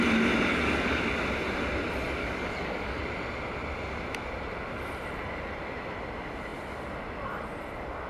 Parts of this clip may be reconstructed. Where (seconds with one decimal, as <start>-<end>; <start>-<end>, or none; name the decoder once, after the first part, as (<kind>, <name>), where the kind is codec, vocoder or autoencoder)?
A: 0.5-1.0 (codec, DAC); 2.2-3.0